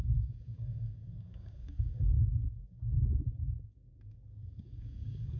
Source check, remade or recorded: remade